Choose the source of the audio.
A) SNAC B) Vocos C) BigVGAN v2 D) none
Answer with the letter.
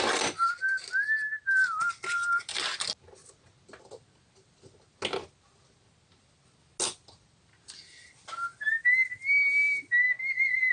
D